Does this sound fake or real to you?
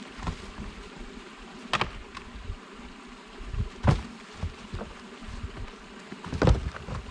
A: real